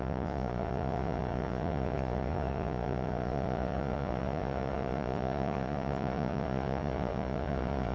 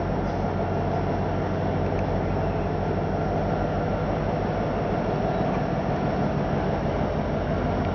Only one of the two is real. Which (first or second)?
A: second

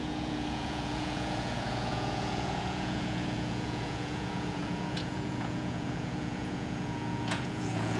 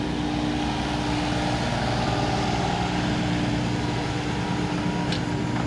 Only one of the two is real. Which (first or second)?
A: second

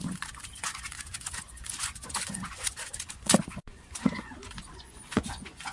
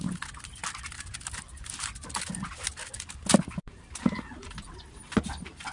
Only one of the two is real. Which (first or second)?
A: second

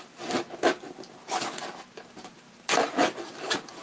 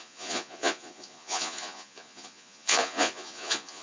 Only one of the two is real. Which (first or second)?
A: first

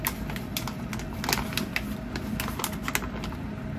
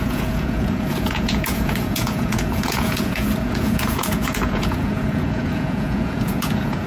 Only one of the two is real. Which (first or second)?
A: first